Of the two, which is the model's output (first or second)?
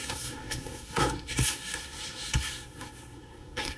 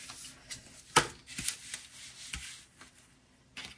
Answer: first